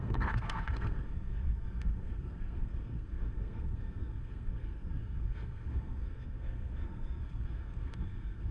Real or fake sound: fake